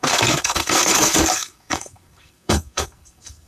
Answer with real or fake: fake